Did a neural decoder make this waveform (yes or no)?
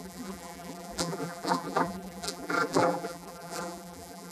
yes